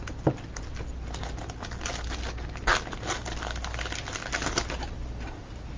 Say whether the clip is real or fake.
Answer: real